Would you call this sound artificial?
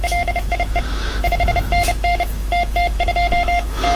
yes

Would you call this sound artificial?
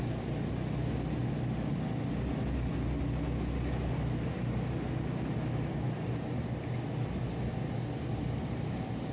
no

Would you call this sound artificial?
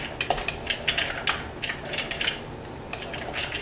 no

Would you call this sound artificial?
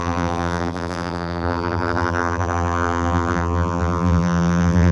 yes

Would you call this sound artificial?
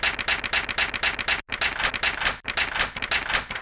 no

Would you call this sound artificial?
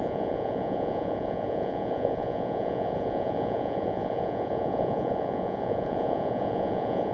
yes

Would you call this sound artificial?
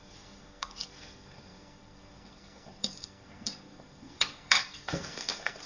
yes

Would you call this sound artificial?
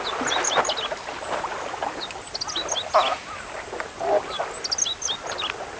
no